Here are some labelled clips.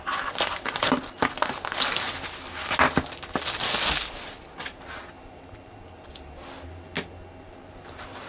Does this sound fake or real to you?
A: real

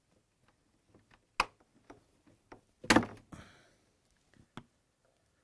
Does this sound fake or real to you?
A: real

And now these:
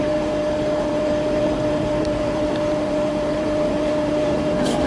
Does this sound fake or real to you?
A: fake